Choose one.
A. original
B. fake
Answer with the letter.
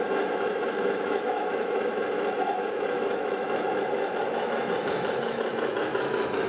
B